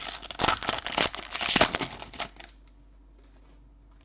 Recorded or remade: recorded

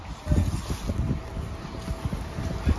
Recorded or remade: recorded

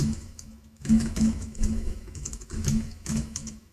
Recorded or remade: remade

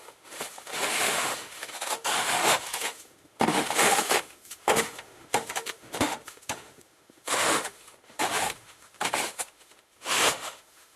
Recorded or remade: remade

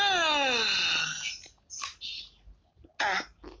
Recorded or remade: recorded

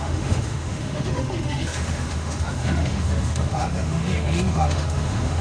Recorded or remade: remade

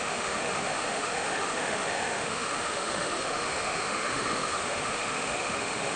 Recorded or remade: remade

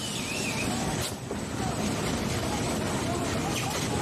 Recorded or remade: recorded